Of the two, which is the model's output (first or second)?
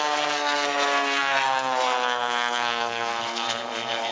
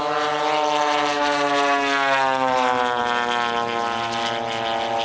first